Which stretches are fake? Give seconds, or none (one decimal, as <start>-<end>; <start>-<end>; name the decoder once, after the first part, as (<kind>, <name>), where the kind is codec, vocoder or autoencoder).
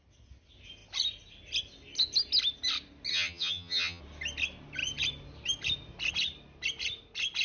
3.1-4.0 (vocoder, HiFi-GAN)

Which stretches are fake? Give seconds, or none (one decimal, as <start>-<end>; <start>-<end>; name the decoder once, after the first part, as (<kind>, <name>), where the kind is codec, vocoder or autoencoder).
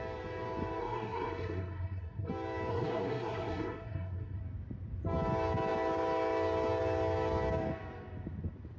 0.8-2.3 (codec, SNAC); 2.7-4.4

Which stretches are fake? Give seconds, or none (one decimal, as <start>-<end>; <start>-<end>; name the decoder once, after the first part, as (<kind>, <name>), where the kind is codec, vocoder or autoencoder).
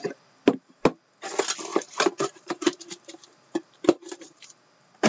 1.7-5.1 (vocoder, BigVGAN v2)